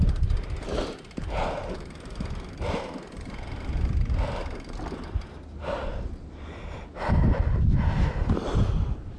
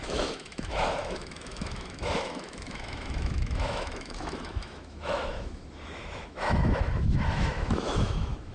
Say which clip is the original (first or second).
first